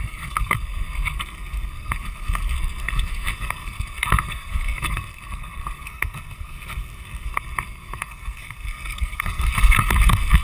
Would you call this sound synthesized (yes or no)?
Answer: yes